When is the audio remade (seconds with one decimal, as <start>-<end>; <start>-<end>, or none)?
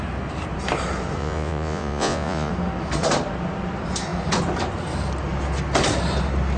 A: 1.2-2.5